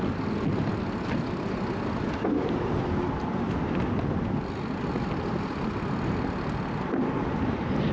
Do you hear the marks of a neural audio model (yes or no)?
no